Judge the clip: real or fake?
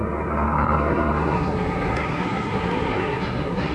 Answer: fake